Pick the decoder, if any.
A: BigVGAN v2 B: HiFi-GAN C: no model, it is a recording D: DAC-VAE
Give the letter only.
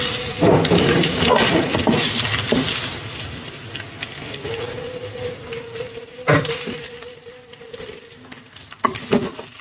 C